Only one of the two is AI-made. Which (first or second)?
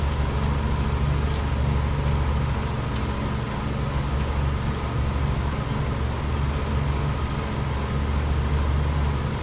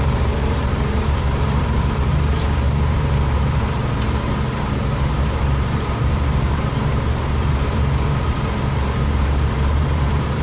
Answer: second